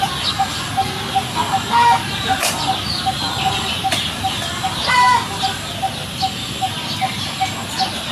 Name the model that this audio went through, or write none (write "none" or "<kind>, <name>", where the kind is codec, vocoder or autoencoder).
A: none